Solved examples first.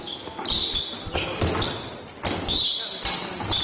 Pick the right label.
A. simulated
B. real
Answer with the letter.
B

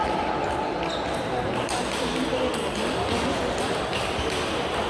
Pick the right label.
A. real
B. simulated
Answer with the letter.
A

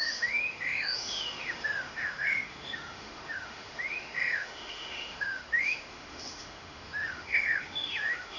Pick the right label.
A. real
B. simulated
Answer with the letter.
B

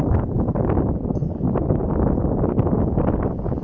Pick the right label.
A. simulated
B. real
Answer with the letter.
B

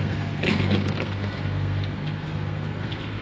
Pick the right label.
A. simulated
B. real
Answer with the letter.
A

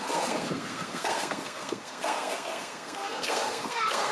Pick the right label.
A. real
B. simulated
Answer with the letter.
B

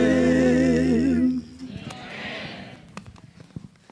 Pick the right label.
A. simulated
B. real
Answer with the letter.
B